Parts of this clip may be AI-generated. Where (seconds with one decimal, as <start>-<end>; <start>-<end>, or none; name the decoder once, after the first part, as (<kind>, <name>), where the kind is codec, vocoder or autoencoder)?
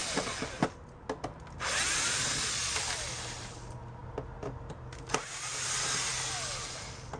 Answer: none